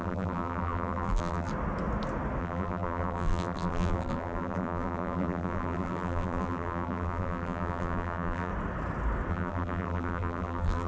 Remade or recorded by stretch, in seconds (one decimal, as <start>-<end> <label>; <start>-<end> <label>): 0.0-1.5 remade; 1.5-2.4 recorded; 2.4-8.5 remade; 8.5-9.3 recorded; 9.3-10.9 remade